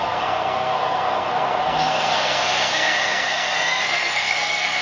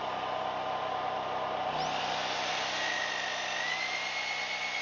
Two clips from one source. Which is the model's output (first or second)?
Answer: first